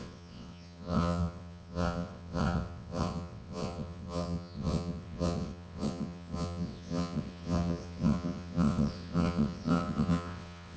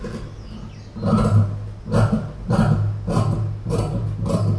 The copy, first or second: first